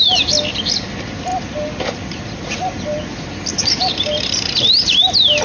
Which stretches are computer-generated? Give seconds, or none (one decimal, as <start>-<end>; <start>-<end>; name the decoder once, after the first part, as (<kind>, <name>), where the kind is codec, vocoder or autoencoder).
none